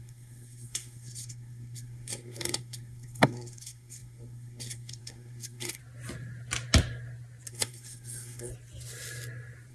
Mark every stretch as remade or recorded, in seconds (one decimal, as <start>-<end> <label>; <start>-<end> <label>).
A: 0.0-5.8 remade; 5.8-7.5 recorded; 7.5-8.5 remade; 8.5-9.7 recorded